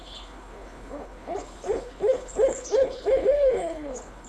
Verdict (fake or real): fake